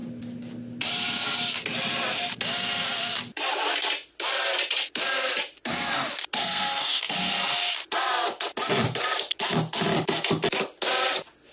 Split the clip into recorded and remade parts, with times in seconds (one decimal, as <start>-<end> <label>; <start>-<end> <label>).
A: 0.0-6.4 recorded; 6.4-7.1 remade; 7.1-11.5 recorded